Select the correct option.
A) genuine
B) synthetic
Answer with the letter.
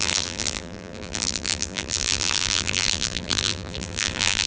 B